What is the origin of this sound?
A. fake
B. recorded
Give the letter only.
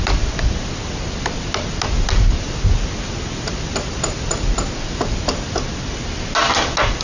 B